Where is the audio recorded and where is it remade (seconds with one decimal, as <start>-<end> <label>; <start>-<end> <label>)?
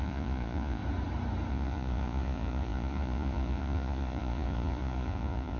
0.0-0.8 remade; 0.8-1.5 recorded; 1.5-5.6 remade